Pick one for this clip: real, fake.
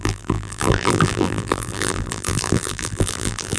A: fake